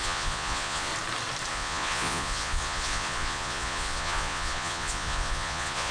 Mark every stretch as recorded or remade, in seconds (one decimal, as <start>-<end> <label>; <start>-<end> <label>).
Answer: 0.0-0.9 remade; 0.9-1.5 recorded; 1.5-5.9 remade